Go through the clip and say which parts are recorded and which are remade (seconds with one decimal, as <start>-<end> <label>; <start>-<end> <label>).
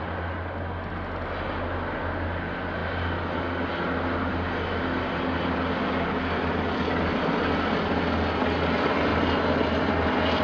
0.0-10.4 recorded